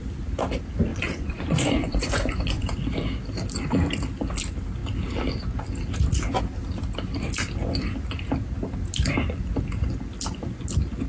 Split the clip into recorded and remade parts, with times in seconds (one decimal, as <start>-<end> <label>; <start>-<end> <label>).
0.0-0.9 recorded; 0.9-2.7 remade; 2.7-11.1 recorded